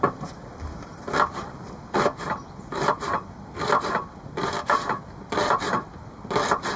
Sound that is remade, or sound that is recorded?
recorded